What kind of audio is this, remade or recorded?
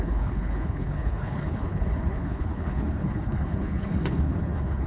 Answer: remade